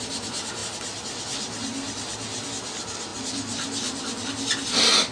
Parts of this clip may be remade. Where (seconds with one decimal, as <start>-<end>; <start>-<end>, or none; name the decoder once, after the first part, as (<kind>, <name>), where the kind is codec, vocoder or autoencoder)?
none